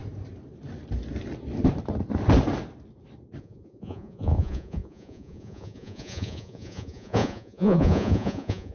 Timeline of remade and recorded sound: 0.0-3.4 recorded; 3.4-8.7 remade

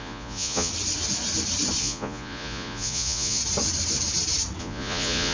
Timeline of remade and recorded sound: 0.0-0.7 remade; 0.7-1.8 recorded; 1.8-3.4 remade; 3.4-4.6 recorded; 4.6-5.3 remade

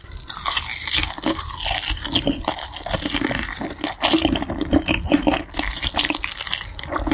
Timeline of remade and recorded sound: 0.0-7.1 recorded